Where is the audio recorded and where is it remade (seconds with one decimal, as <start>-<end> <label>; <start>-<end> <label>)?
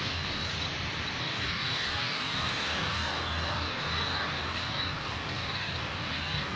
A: 0.0-0.5 remade; 0.5-1.2 recorded; 1.2-6.6 remade